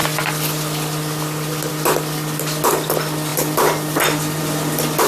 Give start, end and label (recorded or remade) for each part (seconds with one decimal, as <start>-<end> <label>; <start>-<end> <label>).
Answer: 0.0-5.1 recorded